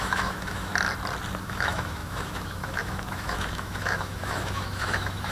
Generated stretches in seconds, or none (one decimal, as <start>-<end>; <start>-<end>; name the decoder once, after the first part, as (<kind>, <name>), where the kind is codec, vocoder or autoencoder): 0.0-0.7 (autoencoder, DAC-VAE); 1.4-5.3